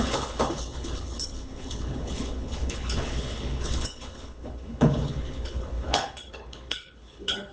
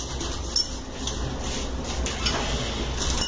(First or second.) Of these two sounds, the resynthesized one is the first